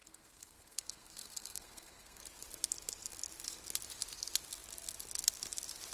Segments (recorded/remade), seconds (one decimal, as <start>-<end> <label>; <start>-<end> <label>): 0.0-2.2 remade; 2.2-5.9 recorded